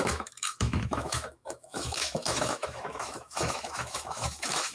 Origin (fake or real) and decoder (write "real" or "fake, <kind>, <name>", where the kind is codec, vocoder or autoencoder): fake, autoencoder, DAC-VAE